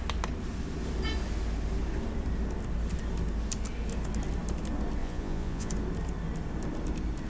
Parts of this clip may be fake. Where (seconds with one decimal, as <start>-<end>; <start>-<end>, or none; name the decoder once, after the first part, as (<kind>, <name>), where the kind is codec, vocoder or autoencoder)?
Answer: 5.0-5.7 (vocoder, Vocos)